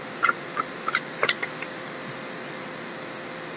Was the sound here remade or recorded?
recorded